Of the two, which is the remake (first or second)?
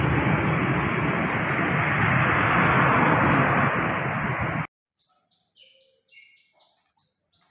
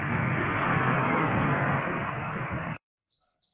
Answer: second